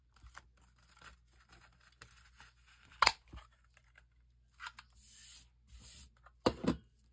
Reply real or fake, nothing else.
real